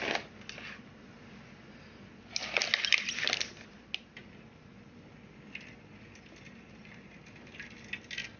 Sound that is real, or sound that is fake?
real